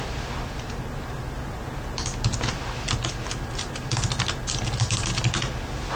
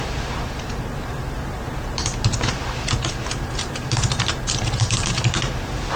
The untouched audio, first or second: first